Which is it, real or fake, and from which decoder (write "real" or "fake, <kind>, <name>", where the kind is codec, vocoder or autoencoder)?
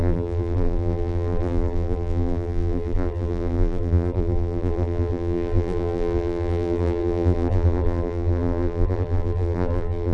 fake, vocoder, BigVGAN v2